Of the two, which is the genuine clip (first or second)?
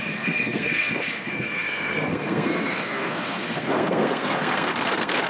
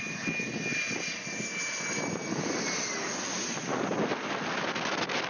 second